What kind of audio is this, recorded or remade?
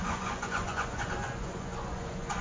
remade